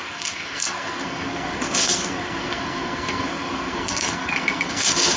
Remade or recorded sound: remade